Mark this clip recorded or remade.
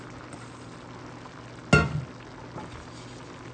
recorded